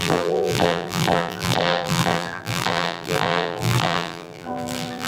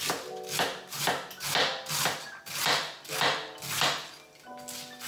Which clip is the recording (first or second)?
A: second